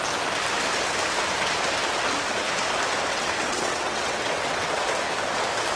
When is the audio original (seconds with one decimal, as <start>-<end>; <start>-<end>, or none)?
0.0-3.1; 4.9-5.8